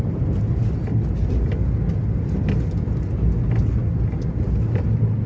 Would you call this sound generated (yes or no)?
no